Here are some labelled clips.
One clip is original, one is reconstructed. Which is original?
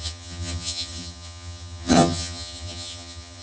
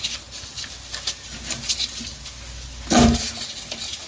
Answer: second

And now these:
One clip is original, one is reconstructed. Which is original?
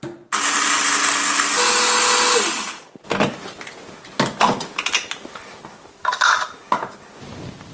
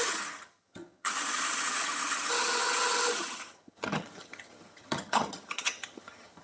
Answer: first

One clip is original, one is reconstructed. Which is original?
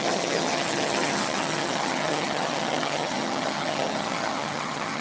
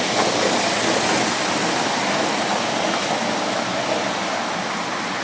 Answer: second